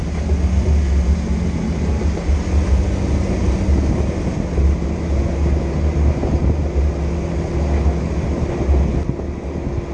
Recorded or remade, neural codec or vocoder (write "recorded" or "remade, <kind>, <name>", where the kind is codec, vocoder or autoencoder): recorded